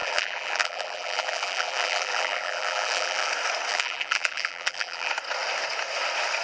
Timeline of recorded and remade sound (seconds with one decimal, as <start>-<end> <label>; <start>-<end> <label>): 0.0-3.3 remade; 3.3-3.7 recorded; 3.7-5.1 remade; 5.1-6.4 recorded